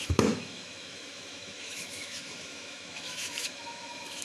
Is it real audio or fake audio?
fake